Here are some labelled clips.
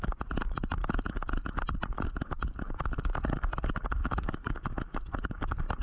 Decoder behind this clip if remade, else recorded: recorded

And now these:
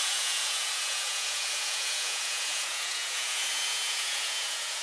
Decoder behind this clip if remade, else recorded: remade, vocoder, Vocos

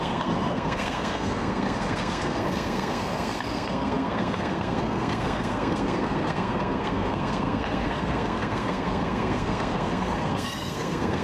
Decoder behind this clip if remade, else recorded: remade, codec, SNAC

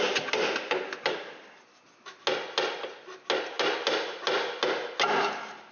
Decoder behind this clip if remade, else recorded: recorded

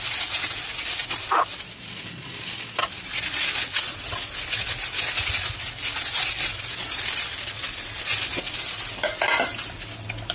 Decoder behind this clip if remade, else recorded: recorded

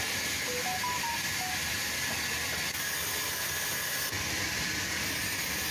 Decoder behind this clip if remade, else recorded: recorded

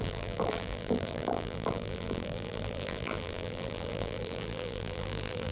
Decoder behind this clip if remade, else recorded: remade, vocoder, BigVGAN v2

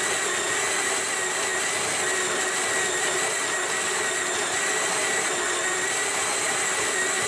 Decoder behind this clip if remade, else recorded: recorded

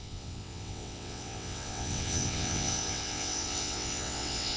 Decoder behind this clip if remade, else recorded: remade, vocoder, WaveNeXt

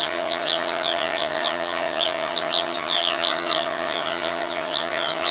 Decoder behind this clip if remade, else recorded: remade, vocoder, HiFi-GAN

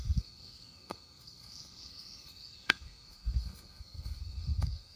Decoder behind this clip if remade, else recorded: remade, codec, SNAC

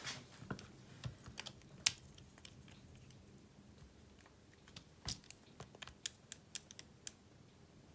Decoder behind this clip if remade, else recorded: recorded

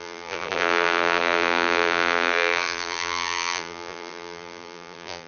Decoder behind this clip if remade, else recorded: remade, vocoder, BigVGAN v2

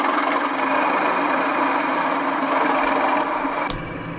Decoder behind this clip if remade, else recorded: recorded